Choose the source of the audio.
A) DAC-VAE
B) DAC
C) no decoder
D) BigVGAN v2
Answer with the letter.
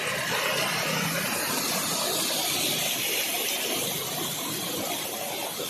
C